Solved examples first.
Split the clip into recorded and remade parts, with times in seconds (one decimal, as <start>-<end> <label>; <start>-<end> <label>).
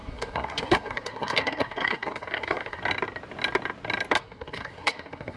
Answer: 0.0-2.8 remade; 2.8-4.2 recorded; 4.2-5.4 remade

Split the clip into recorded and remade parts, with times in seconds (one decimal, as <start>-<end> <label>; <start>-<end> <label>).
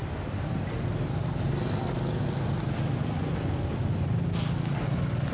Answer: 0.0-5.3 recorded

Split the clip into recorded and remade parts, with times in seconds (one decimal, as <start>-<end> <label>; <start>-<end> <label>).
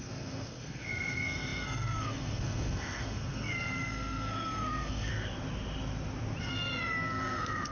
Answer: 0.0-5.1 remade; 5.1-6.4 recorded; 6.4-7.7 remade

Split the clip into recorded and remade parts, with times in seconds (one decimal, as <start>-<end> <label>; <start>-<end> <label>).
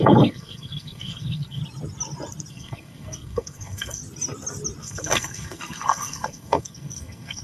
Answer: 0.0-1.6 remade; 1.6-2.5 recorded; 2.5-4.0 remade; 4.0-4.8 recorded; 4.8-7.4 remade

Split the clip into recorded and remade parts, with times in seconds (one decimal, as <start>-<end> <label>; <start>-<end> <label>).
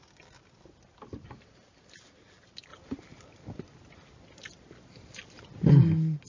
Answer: 0.0-6.3 recorded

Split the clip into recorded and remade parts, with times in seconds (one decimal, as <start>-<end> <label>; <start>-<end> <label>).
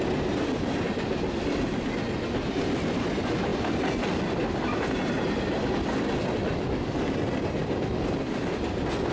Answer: 0.0-9.1 recorded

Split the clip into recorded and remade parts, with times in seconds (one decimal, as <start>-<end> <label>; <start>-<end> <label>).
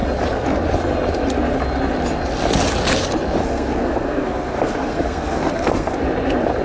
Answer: 0.0-3.4 recorded; 3.4-6.0 remade; 6.0-6.6 recorded